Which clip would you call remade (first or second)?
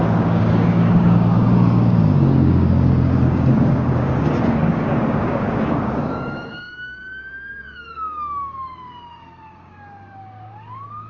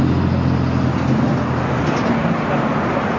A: first